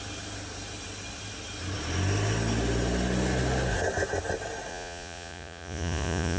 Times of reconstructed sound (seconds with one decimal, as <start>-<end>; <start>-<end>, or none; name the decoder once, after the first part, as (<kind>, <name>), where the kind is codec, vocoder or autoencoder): 4.7-6.4 (vocoder, Vocos)